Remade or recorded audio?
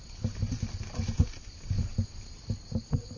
recorded